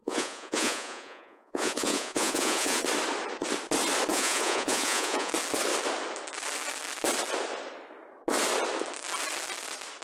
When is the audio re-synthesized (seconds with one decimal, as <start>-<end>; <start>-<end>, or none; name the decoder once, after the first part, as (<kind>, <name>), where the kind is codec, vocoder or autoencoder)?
0.0-2.8 (vocoder, Vocos); 4.1-5.3